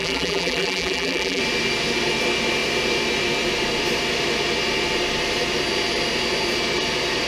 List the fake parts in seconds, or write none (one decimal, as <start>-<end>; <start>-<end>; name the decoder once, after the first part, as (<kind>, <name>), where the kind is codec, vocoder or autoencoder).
0.0-1.4 (vocoder, BigVGAN v2)